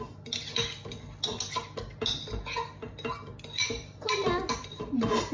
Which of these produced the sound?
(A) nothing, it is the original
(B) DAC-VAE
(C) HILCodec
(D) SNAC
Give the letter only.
A